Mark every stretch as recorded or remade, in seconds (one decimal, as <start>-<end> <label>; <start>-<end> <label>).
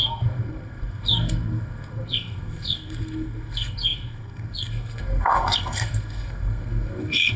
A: 0.0-7.4 remade